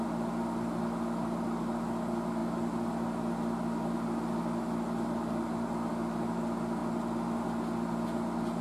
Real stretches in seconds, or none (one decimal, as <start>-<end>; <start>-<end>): 0.0-8.6